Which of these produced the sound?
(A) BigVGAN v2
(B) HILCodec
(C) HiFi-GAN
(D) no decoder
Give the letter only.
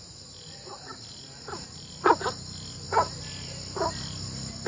D